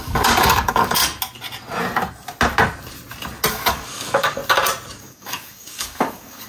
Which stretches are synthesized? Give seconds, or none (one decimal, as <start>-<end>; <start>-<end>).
0.0-1.0; 3.5-4.4; 5.0-6.5